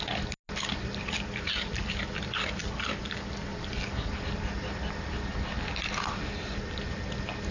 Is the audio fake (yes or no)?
no